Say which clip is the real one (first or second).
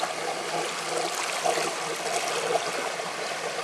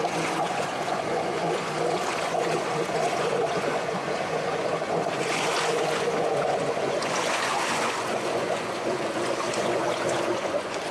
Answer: first